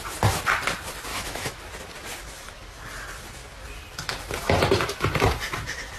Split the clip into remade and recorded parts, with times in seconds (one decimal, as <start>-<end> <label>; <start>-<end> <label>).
0.0-1.1 recorded; 1.1-1.6 remade; 1.6-6.0 recorded